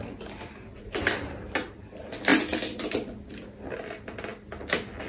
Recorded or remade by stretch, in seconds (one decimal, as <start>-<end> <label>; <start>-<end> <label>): 0.0-5.1 recorded